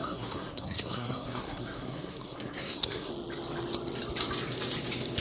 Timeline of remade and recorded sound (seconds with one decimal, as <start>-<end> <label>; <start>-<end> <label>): 0.0-3.1 remade; 3.1-5.2 recorded